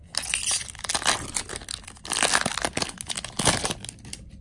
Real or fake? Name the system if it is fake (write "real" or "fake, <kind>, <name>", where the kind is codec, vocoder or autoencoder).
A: real